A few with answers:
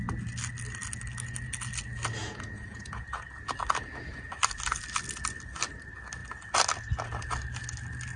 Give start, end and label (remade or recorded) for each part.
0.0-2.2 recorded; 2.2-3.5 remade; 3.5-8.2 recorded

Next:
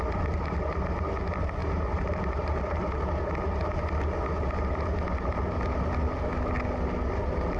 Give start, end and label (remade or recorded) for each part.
0.0-1.6 recorded; 1.6-2.6 remade; 2.6-7.6 recorded

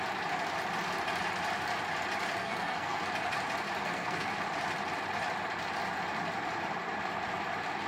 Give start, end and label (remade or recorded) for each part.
0.0-2.4 recorded; 2.4-3.0 remade; 3.0-3.8 recorded; 3.8-4.3 remade; 4.3-7.9 recorded

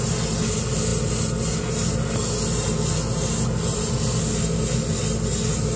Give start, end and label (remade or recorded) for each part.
0.0-5.8 recorded